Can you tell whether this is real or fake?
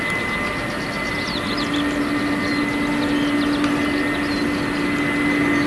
real